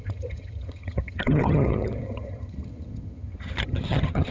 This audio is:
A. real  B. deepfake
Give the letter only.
B